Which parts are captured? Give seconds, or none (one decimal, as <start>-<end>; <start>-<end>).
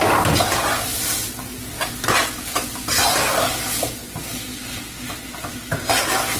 0.0-6.4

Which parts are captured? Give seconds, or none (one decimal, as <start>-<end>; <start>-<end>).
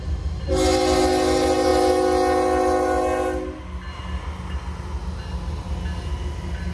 0.0-6.7